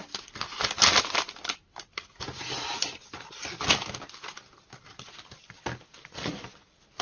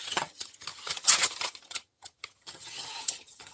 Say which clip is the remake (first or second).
second